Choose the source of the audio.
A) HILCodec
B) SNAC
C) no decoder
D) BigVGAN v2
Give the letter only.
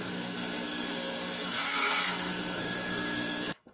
B